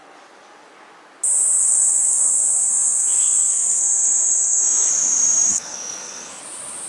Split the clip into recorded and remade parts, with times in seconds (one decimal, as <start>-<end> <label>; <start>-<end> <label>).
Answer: 0.0-1.6 recorded; 1.6-4.9 remade; 4.9-5.5 recorded; 5.5-6.4 remade; 6.4-6.9 recorded